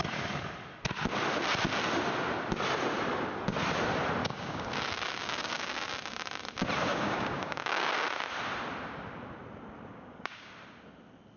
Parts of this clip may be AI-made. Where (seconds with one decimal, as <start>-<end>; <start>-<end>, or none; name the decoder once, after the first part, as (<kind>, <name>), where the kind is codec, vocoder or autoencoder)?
4.2-4.7 (codec, DAC); 5.2-5.8; 6.9-7.9; 9.9-10.5